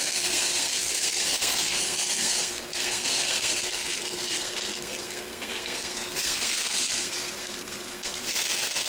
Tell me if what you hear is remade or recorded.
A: remade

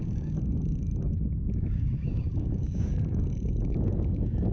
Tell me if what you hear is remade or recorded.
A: remade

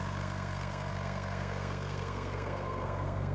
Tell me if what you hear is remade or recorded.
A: remade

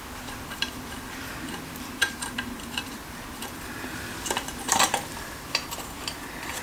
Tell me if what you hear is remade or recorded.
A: remade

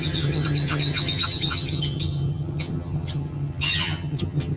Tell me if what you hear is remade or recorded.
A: remade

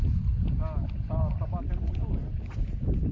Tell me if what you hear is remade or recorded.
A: recorded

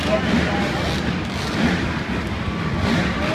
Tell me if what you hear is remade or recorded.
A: recorded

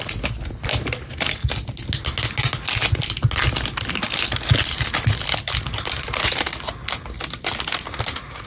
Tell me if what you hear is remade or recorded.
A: recorded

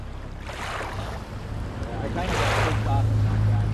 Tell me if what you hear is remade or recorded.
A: recorded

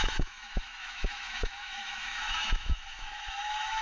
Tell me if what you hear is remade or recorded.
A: remade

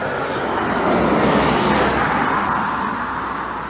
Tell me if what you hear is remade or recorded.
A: recorded